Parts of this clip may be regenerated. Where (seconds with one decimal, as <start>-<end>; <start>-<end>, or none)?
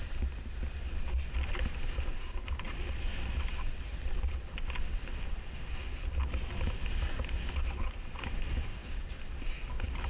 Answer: none